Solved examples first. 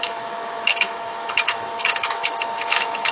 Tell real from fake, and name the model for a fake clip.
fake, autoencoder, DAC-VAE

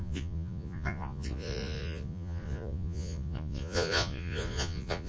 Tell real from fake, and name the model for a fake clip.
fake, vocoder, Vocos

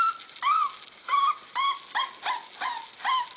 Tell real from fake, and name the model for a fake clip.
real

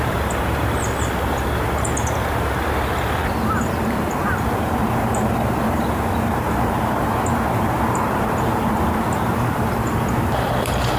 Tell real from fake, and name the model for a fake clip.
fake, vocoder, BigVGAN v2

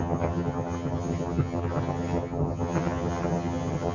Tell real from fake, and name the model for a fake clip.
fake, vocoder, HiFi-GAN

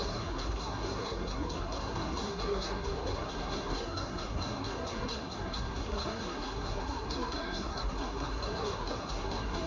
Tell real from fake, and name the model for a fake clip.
fake, codec, SNAC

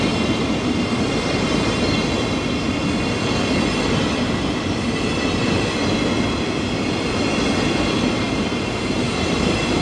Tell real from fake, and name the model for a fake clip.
real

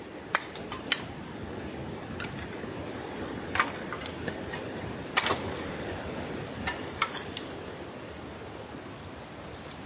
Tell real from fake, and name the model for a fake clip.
real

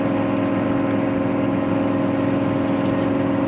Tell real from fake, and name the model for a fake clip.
real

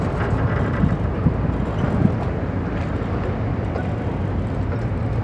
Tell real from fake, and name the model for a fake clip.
real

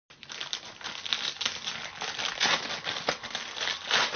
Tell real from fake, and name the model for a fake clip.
real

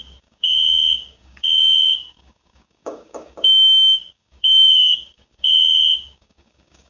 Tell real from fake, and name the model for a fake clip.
fake, codec, DAC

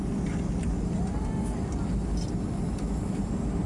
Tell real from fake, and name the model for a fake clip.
real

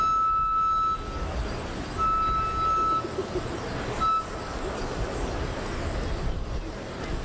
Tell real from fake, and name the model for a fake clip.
real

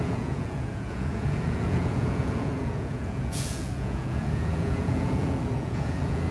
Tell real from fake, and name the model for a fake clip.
fake, vocoder, Vocos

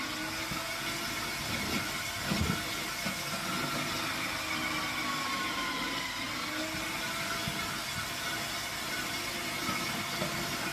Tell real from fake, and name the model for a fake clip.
real